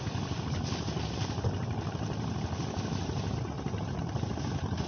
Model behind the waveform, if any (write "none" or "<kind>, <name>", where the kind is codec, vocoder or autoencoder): none